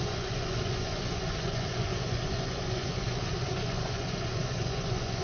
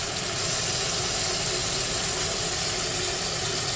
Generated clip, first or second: first